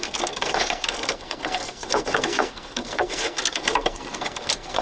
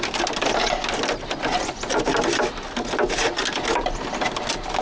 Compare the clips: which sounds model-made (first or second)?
first